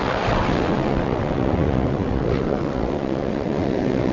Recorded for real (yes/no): no